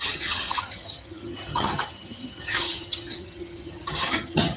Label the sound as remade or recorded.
remade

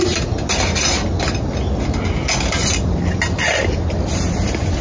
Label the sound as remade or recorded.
recorded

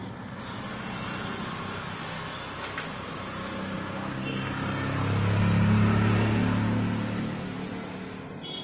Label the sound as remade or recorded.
recorded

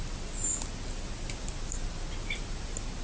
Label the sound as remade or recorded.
recorded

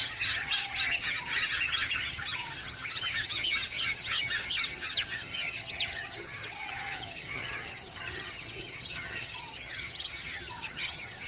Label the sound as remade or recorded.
remade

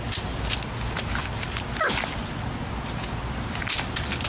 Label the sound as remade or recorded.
recorded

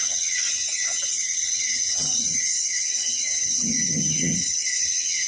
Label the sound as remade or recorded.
remade